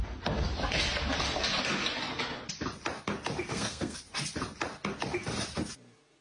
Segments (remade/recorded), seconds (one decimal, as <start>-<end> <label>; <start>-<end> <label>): 0.0-3.5 recorded; 3.5-4.0 remade; 4.0-6.2 recorded

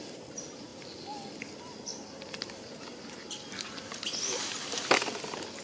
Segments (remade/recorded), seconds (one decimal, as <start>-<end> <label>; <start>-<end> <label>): 0.0-5.6 recorded

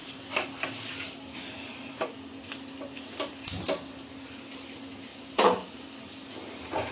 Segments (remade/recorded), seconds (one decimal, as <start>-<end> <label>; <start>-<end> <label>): 0.0-6.9 recorded

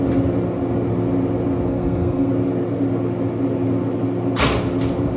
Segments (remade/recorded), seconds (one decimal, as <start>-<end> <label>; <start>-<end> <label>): 0.0-1.7 recorded; 1.7-2.3 remade; 2.3-5.2 recorded

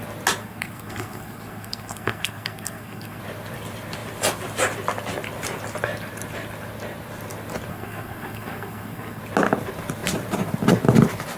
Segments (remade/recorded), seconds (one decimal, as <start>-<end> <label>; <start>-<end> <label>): 0.0-0.4 recorded; 0.4-3.2 remade; 3.2-7.7 recorded; 7.7-9.2 remade; 9.2-11.4 recorded